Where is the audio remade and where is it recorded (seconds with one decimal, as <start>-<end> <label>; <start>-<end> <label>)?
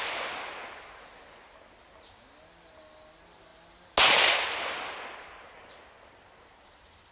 0.0-7.1 recorded